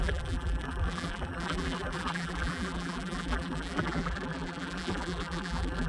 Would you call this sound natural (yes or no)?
no